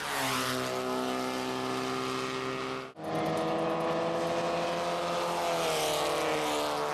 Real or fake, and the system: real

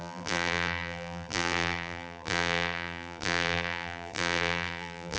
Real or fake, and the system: fake, vocoder, BigVGAN v2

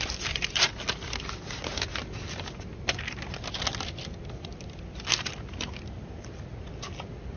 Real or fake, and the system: real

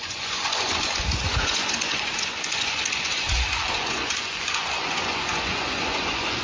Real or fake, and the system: fake, vocoder, Vocos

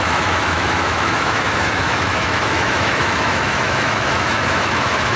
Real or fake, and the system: fake, autoencoder, DAC-VAE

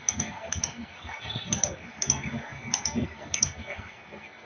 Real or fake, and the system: fake, codec, SNAC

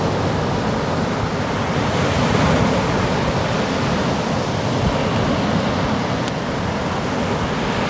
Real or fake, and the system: real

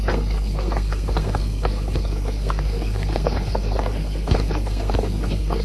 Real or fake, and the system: fake, codec, SNAC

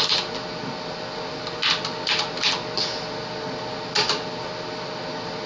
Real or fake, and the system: real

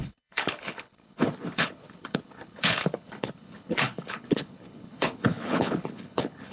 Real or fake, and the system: fake, codec, HILCodec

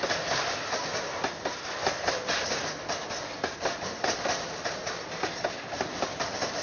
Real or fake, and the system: real